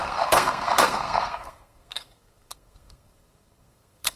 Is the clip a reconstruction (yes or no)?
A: yes